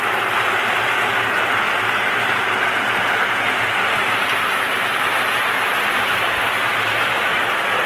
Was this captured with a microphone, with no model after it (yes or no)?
yes